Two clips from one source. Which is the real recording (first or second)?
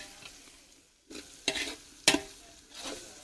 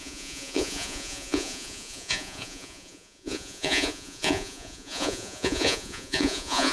first